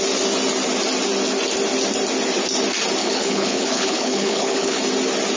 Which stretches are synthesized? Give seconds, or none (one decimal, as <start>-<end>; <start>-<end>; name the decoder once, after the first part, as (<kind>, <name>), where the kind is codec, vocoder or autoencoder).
3.0-4.8 (codec, HILCodec)